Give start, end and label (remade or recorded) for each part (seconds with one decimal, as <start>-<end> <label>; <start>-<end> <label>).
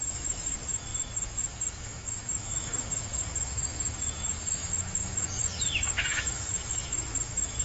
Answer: 0.0-7.6 remade